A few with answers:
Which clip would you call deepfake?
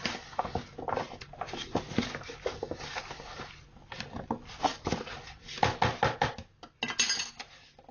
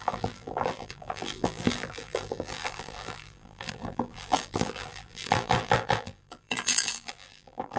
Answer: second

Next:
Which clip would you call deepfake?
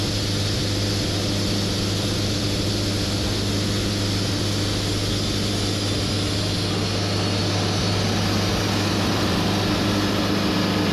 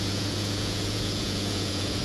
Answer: second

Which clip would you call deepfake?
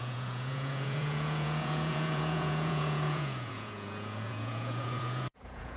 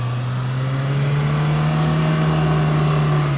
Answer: first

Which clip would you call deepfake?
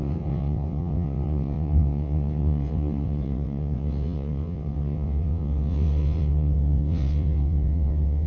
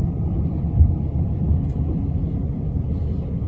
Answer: first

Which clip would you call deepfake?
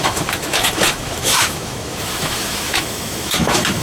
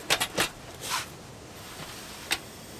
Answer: first